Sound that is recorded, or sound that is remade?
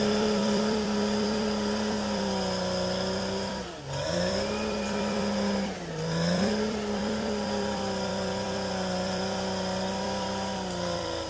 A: remade